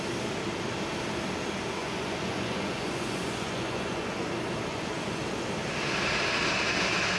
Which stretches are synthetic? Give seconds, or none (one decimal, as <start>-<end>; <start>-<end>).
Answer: 1.8-4.3; 4.7-5.2

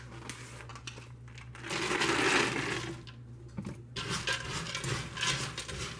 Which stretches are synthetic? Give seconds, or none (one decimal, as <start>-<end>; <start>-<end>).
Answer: none